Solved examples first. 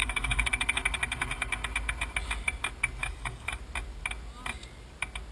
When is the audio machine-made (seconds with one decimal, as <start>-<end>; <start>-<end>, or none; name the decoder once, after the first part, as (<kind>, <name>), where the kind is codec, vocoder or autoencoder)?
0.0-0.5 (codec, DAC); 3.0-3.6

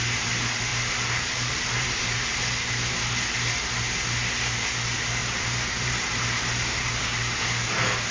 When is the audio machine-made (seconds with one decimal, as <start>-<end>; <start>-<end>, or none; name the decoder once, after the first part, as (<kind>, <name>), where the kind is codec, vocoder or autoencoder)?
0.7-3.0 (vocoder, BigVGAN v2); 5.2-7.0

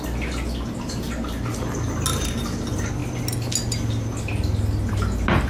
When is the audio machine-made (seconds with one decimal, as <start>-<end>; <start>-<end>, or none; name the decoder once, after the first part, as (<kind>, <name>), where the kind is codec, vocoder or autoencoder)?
none